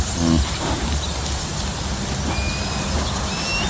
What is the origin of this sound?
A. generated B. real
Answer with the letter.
B